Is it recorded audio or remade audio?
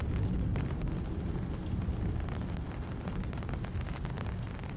recorded